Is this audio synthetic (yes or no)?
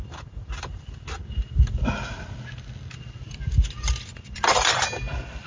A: no